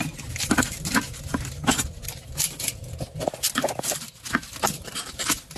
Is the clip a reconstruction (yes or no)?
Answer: no